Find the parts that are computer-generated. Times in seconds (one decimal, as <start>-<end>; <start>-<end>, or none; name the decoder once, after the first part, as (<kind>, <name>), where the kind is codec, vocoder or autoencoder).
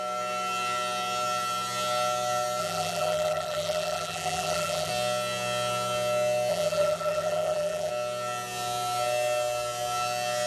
2.6-4.9 (vocoder, BigVGAN v2); 6.5-7.9